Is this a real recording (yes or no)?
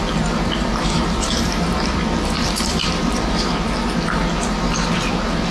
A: no